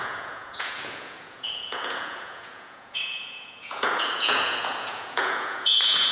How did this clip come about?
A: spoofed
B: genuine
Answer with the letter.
A